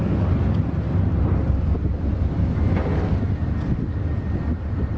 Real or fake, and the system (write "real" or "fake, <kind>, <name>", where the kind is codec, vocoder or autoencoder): real